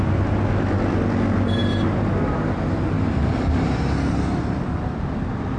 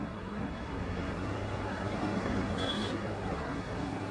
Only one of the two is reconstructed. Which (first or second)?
second